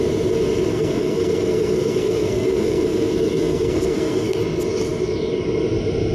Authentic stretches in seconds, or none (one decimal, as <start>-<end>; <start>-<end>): 0.0-0.7; 4.4-6.1